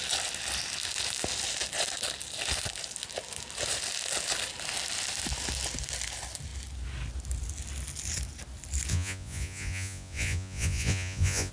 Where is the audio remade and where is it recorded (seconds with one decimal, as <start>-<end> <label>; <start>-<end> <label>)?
0.0-8.9 recorded; 8.9-11.5 remade